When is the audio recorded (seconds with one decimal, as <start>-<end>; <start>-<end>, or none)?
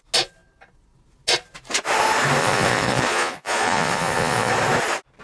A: 0.0-2.4; 4.5-5.2